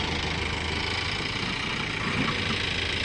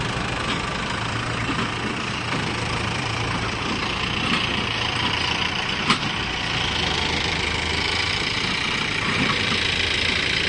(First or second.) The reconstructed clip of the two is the second